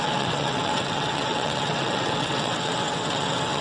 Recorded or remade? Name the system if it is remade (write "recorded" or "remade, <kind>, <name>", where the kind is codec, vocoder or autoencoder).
remade, vocoder, WaveNeXt